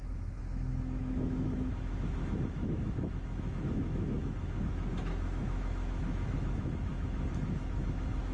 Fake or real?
fake